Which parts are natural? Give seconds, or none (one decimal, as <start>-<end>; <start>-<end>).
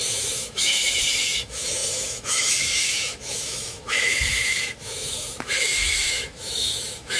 none